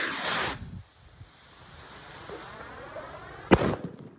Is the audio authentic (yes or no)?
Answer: yes